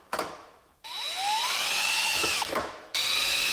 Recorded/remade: remade